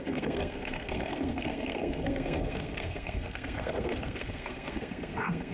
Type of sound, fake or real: fake